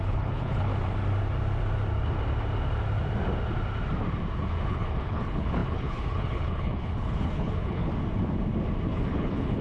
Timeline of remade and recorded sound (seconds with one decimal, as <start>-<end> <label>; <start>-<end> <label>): 0.0-0.7 remade; 0.7-4.7 recorded; 4.7-7.9 remade; 7.9-8.9 recorded; 8.9-9.6 remade